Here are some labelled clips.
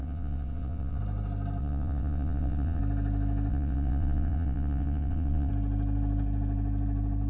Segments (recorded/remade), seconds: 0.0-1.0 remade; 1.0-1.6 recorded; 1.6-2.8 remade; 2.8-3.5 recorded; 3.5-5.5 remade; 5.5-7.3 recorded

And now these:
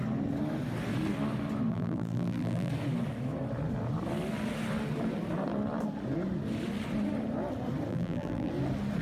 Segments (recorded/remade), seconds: 0.0-1.7 recorded; 1.7-2.7 remade; 2.7-7.9 recorded; 7.9-8.5 remade; 8.5-9.0 recorded

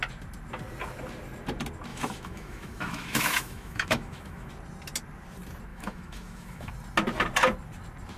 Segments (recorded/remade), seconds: 0.0-1.9 recorded; 1.9-4.5 remade; 4.5-5.7 recorded; 5.7-6.7 remade; 6.7-8.2 recorded

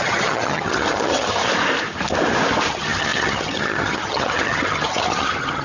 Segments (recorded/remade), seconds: 0.0-1.4 remade; 1.4-2.7 recorded; 2.7-5.6 remade

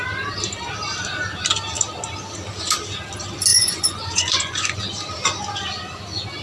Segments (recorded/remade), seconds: 0.0-3.5 recorded; 3.5-4.8 remade; 4.8-6.4 recorded

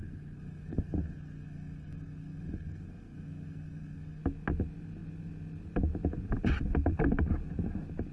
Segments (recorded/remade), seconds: 0.0-4.2 remade; 4.2-8.1 recorded

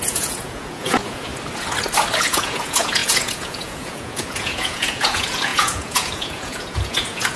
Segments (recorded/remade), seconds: 0.0-1.3 remade; 1.3-2.2 recorded; 2.2-7.4 remade

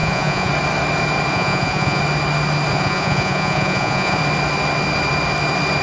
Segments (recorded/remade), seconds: 0.0-0.5 remade; 0.5-1.3 recorded; 1.3-2.0 remade; 2.0-2.7 recorded; 2.7-4.2 remade; 4.2-5.8 recorded